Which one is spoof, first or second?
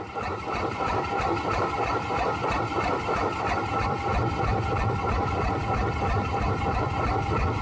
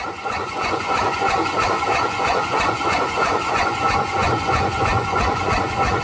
second